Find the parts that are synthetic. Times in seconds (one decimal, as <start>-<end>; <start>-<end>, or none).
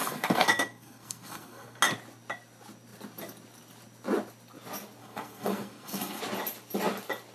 0.0-1.8; 5.0-6.2